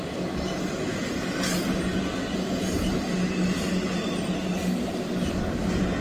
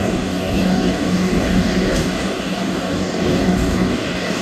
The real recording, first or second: first